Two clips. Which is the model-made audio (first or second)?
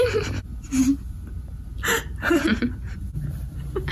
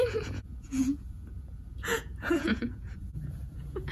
second